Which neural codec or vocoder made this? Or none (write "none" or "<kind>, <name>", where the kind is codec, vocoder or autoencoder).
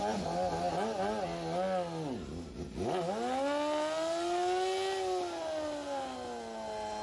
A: none